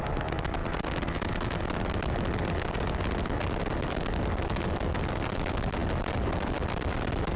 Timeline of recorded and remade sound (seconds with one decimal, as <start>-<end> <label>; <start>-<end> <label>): 0.0-7.4 recorded